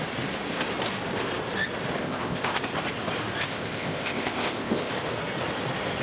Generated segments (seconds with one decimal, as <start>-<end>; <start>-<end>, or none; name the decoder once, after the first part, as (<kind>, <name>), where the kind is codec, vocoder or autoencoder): 2.0-2.6 (codec, ZipCodec); 3.5-4.9